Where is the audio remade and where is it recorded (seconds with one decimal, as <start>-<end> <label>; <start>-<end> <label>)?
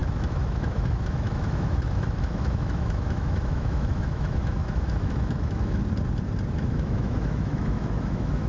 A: 0.0-5.8 remade; 5.8-6.5 recorded; 6.5-8.5 remade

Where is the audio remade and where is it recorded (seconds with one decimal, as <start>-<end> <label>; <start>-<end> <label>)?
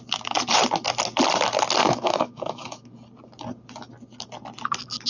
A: 0.0-1.8 recorded; 1.8-2.9 remade; 2.9-5.1 recorded